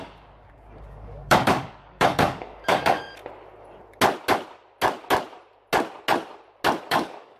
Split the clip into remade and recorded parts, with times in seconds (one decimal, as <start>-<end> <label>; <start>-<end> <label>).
0.0-3.1 remade; 3.1-6.9 recorded; 6.9-7.4 remade